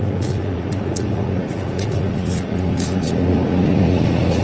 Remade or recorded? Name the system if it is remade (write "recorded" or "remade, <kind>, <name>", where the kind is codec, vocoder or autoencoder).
remade, vocoder, Vocos